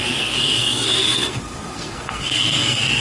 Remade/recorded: remade